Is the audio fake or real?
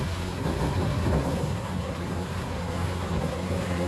fake